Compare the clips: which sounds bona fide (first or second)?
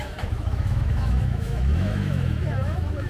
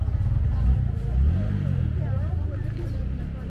second